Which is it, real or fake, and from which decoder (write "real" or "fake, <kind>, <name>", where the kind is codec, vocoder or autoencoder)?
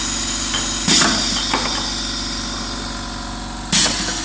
real